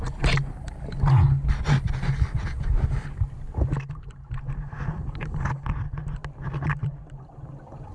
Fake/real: real